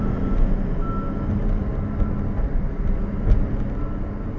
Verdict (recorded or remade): recorded